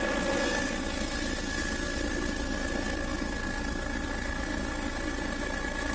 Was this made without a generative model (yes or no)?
yes